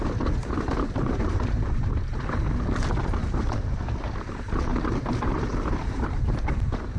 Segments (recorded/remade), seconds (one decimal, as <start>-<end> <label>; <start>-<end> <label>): 0.0-0.4 recorded; 0.4-2.4 remade; 2.4-3.2 recorded; 3.2-3.8 remade; 3.8-4.7 recorded; 4.7-7.0 remade